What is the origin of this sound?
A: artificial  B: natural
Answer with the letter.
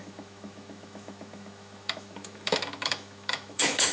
A